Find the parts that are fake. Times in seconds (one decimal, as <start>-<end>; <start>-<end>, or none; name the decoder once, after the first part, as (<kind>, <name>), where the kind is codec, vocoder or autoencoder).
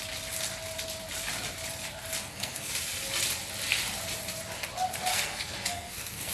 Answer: 2.2-2.7 (codec, SNAC); 5.1-6.3